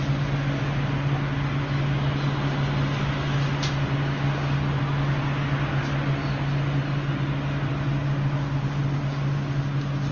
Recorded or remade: recorded